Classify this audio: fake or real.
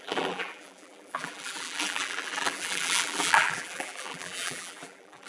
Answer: fake